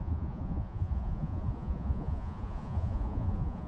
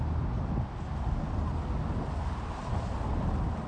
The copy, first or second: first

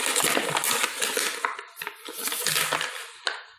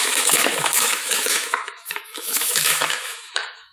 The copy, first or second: second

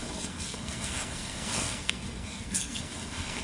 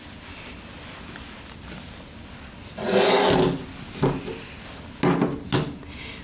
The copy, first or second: first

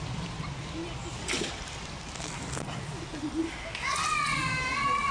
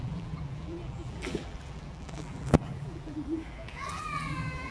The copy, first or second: second